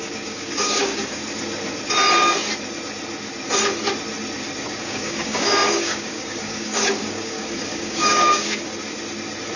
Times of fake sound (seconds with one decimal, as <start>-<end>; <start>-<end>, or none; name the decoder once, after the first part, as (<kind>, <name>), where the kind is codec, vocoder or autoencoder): 0.0-1.2 (codec, DAC); 4.8-8.7

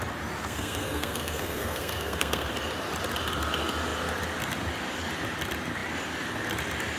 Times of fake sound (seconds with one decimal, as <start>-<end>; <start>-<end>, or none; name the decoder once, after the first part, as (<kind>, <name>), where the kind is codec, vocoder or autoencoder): 0.4-2.5 (codec, SNAC)

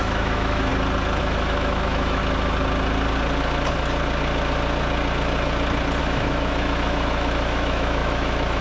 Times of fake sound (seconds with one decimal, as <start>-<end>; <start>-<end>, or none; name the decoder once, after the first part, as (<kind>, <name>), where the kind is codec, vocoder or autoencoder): 0.0-0.7 (autoencoder, DAC-VAE); 1.2-2.2; 6.0-8.6

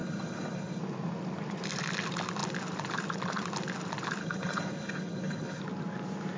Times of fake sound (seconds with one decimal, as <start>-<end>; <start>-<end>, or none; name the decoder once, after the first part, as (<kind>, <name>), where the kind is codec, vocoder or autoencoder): 0.0-0.8 (codec, HILCodec); 4.2-5.6

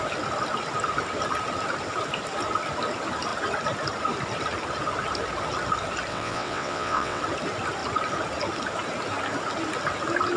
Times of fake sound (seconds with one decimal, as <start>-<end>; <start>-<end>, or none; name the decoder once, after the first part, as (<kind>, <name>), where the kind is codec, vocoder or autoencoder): 6.1-7.2 (vocoder, WaveNeXt)

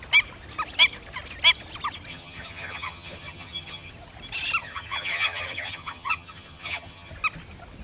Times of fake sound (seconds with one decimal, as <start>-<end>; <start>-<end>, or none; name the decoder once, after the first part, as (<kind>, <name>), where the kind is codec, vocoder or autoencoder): 2.1-3.9 (vocoder, HiFi-GAN); 4.6-7.1

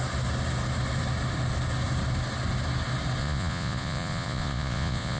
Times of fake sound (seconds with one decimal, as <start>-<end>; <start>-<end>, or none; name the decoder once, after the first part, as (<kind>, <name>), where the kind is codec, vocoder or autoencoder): 3.2-5.2 (vocoder, Vocos)

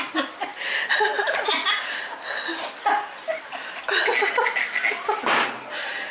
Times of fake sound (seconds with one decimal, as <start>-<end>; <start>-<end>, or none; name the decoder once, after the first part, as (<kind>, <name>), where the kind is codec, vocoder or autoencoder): none